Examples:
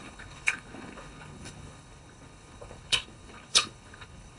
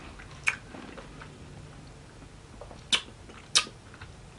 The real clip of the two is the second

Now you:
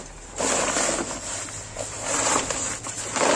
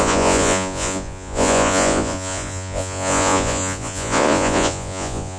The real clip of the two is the first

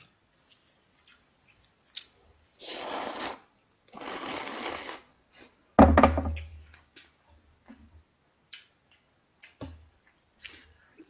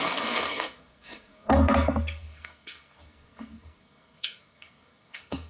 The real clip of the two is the first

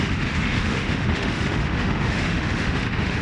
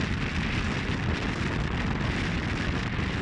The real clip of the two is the second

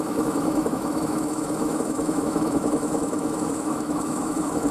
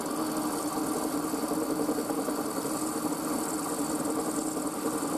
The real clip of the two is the second